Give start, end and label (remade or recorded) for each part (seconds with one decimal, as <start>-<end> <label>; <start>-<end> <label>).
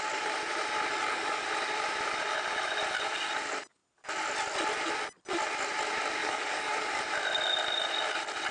0.0-0.9 recorded; 0.9-1.5 remade; 1.5-6.2 recorded; 6.2-7.0 remade; 7.0-8.5 recorded